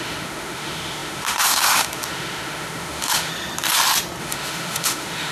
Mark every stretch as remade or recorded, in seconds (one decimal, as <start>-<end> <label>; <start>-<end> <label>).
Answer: 0.0-3.3 remade; 3.3-4.2 recorded; 4.2-5.3 remade